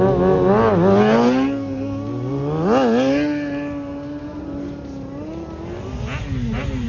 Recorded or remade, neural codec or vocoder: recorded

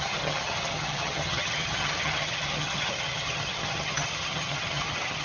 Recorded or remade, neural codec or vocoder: remade, vocoder, HiFi-GAN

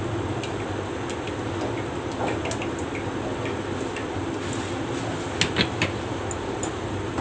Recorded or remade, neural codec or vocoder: recorded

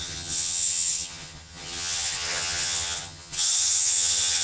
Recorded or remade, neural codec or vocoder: remade, vocoder, HiFi-GAN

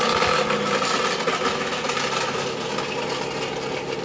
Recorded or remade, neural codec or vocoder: recorded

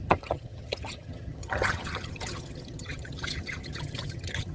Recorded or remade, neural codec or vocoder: remade, vocoder, HiFi-GAN